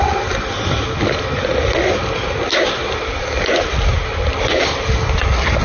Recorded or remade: recorded